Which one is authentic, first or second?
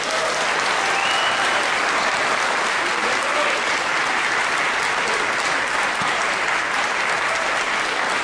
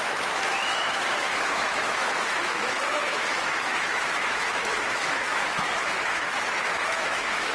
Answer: first